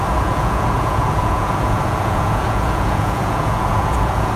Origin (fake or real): fake